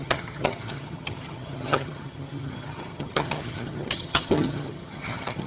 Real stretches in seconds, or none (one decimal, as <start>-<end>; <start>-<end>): none